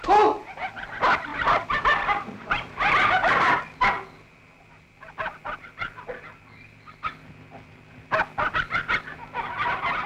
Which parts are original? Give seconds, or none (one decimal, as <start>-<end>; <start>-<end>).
0.0-1.3; 3.6-10.1